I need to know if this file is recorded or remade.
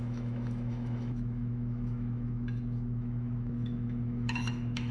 remade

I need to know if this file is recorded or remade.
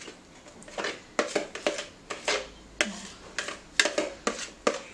recorded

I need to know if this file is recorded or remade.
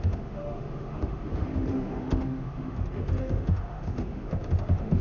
remade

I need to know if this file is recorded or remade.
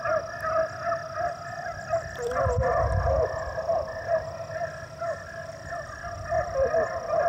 recorded